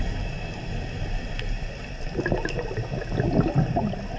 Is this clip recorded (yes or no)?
yes